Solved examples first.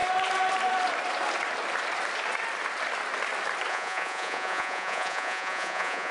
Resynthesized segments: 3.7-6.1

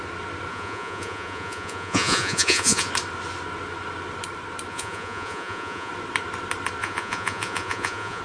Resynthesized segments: 0.5-2.9; 4.7-5.9; 6.8-8.2

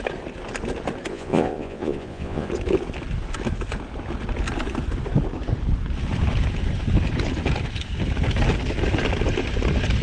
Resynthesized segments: 1.1-2.5

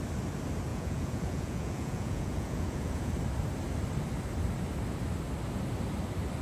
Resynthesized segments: 0.7-3.1

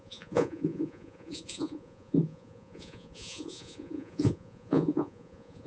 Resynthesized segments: 0.0-5.7

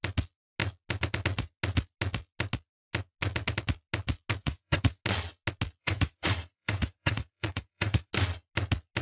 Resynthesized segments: 4.4-5.0; 5.8-8.1